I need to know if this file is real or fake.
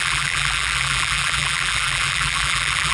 fake